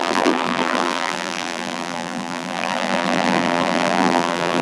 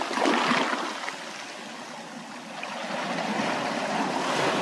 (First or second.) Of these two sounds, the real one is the second